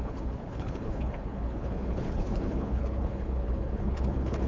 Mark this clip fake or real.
fake